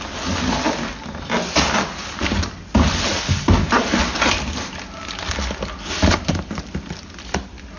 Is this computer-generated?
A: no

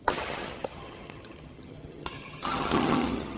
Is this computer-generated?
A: yes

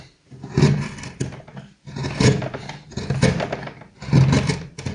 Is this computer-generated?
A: no